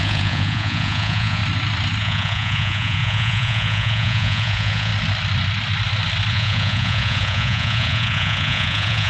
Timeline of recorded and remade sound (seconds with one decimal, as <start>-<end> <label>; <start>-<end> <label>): 0.0-1.4 remade; 1.4-2.0 recorded; 2.0-4.9 remade; 4.9-6.3 recorded; 6.3-9.1 remade